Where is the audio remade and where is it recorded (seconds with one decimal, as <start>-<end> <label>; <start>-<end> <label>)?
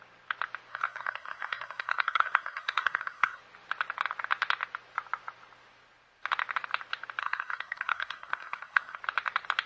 0.0-0.7 recorded; 0.7-3.4 remade; 3.4-7.2 recorded; 7.2-9.0 remade; 9.0-9.7 recorded